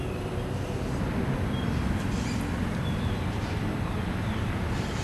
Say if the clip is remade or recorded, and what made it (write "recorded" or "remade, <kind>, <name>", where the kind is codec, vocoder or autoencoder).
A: recorded